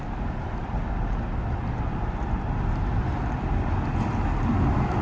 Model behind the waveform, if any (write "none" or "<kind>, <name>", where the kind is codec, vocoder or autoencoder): none